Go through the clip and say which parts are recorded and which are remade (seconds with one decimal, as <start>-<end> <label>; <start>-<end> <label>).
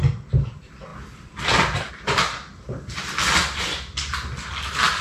0.0-3.4 recorded; 3.4-4.5 remade; 4.5-5.0 recorded